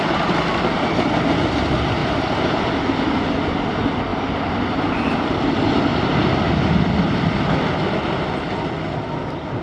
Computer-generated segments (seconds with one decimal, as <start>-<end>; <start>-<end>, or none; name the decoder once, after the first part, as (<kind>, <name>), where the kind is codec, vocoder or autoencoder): 4.1-5.0 (vocoder, BigVGAN v2); 5.9-7.0